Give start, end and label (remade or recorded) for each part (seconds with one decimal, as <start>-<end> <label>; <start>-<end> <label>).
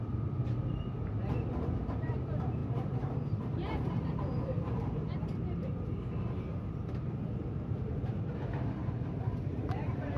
0.0-10.2 remade